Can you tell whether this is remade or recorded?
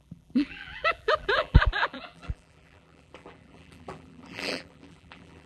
remade